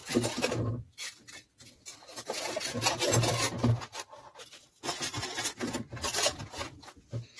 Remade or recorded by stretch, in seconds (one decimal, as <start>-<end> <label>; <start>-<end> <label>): 0.0-7.4 recorded